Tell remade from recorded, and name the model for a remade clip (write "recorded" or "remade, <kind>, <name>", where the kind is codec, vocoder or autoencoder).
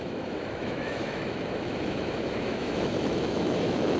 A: remade, autoencoder, DAC-VAE